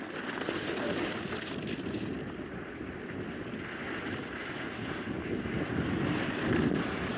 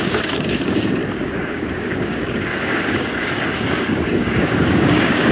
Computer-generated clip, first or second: second